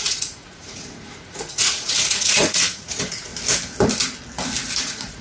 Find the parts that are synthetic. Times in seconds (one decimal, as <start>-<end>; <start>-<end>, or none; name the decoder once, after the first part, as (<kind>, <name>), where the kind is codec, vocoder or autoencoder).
0.0-3.3 (vocoder, Vocos); 4.8-5.2